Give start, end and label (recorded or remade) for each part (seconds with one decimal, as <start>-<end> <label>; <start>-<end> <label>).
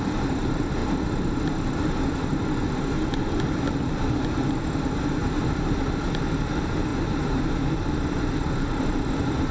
0.0-0.8 remade; 0.8-5.5 recorded; 5.5-9.5 remade